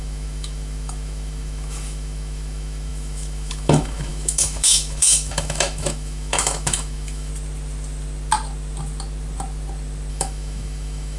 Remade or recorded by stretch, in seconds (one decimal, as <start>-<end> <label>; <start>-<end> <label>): 0.0-7.3 remade; 7.3-10.1 recorded; 10.1-11.2 remade